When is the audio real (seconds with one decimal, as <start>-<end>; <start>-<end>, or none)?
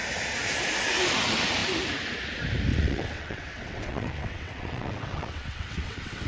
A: 0.0-2.7